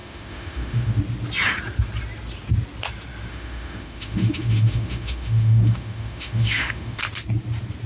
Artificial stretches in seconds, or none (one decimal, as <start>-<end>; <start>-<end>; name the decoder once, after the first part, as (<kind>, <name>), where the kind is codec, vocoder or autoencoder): 0.0-1.0 (autoencoder, DAC-VAE); 3.3-7.0

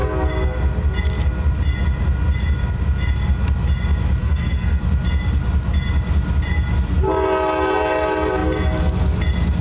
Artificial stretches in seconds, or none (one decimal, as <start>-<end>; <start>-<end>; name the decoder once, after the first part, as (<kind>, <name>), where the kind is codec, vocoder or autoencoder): 4.2-4.8 (codec, SNAC)

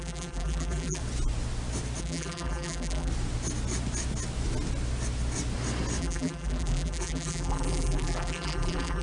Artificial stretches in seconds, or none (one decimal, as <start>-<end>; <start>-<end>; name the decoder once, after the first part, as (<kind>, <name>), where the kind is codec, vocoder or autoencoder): 0.0-1.0 (vocoder, BigVGAN v2); 2.0-3.1; 6.0-9.0

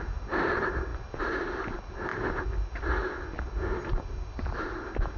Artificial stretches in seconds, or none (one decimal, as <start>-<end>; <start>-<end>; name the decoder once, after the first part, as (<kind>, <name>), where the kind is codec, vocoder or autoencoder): none